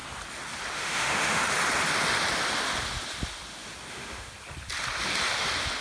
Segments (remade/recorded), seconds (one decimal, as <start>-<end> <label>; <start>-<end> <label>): 0.0-0.7 recorded; 0.7-1.4 remade; 1.4-3.9 recorded; 3.9-4.3 remade; 4.3-5.8 recorded